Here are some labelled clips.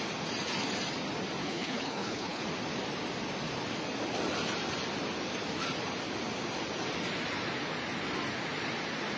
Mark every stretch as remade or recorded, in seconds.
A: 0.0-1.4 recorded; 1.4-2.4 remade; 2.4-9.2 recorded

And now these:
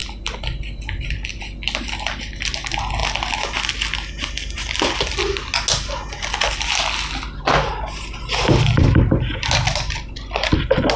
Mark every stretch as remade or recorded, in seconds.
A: 0.0-11.0 recorded

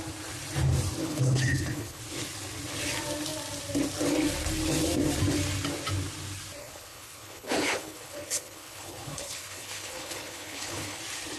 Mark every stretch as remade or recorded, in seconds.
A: 0.0-1.0 recorded; 1.0-2.0 remade; 2.0-6.6 recorded; 6.6-11.0 remade; 11.0-11.4 recorded

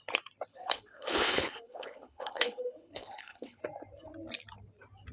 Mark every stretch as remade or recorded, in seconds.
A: 0.0-0.5 recorded; 0.5-3.6 remade; 3.6-5.1 recorded